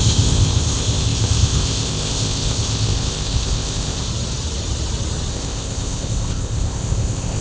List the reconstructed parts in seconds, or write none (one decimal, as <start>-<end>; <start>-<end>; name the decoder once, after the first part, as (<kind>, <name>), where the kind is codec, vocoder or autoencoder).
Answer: 0.0-4.1 (codec, ZipCodec); 5.3-7.4